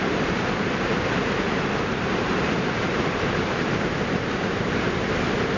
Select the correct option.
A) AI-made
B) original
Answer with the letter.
A